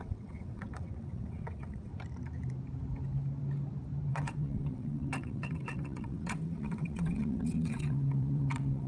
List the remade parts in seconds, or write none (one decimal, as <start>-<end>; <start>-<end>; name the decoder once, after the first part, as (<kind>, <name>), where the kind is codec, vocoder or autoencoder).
0.0-1.9 (vocoder, WaveNeXt); 4.1-8.9